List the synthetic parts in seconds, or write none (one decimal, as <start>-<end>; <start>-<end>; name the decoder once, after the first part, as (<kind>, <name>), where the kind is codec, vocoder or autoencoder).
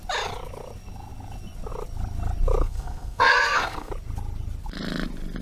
2.6-3.9 (codec, SNAC)